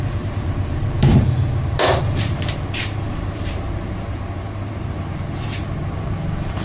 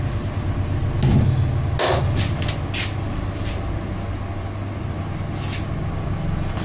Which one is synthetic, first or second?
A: first